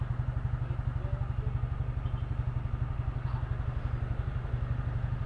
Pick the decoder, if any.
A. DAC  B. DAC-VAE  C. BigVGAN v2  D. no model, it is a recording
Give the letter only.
D